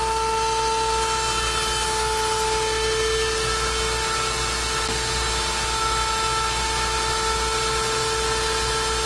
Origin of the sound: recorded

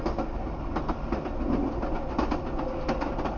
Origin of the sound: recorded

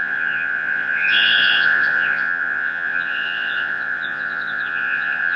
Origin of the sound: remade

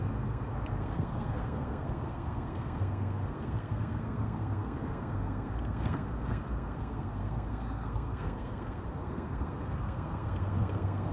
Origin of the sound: remade